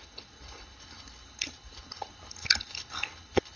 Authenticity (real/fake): fake